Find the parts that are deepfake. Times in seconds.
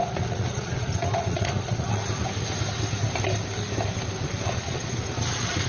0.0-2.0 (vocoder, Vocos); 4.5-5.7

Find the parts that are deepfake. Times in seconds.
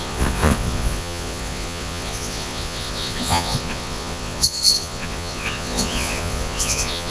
0.0-7.1 (vocoder, Vocos)